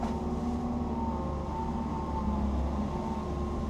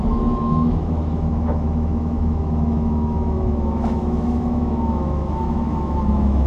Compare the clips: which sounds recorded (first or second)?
first